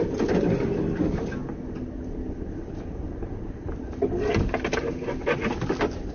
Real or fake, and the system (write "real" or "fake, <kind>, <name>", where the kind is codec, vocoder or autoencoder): real